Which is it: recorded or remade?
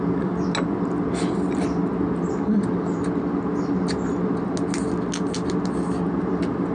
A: recorded